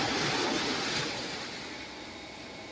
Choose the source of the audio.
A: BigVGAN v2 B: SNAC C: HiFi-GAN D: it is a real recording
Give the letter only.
D